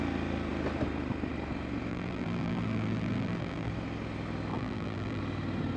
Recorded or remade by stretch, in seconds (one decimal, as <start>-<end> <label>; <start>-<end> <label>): 0.0-1.9 recorded; 1.9-3.7 remade; 3.7-4.5 recorded; 4.5-5.2 remade; 5.2-5.8 recorded